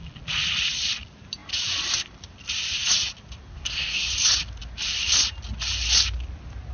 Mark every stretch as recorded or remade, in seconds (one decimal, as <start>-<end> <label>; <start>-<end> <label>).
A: 0.0-3.5 recorded; 3.5-4.1 remade; 4.1-6.7 recorded